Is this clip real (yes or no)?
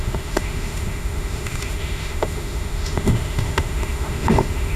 no